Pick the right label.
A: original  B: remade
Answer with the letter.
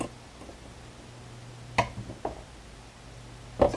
A